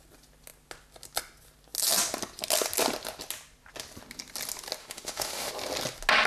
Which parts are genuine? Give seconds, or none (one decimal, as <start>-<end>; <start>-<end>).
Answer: 0.0-4.8; 5.5-6.3